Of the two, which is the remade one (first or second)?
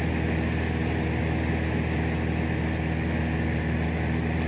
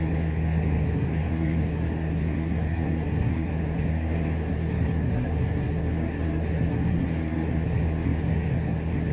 second